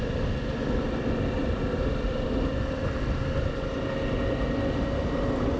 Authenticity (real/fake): real